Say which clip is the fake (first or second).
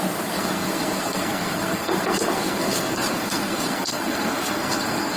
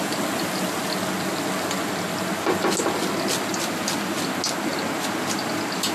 first